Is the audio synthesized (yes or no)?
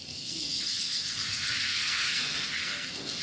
yes